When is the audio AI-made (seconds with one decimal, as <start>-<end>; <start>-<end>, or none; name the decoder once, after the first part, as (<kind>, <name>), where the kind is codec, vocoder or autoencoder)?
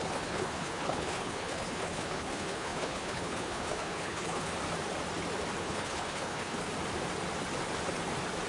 0.0-4.5 (codec, HILCodec); 5.6-6.6